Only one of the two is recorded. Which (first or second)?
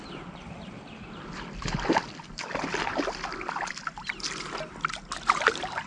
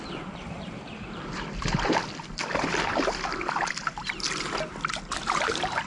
first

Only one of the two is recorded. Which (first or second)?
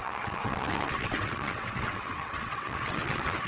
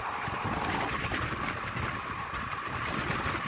second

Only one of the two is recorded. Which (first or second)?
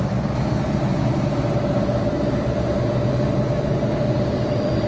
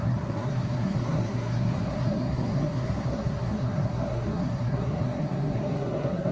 first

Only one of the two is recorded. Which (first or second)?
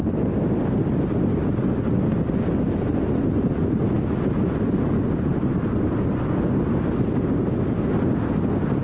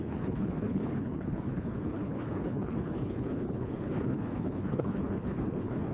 first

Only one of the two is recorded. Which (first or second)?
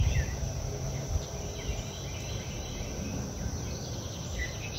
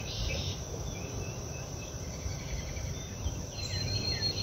first